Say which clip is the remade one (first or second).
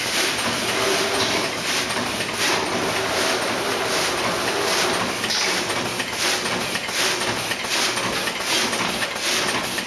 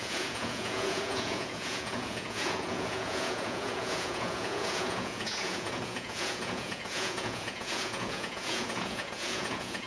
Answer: second